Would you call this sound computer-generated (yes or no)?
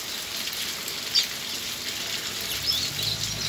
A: no